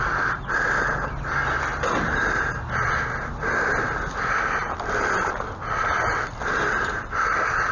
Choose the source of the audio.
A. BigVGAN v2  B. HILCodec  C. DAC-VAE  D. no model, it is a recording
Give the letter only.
D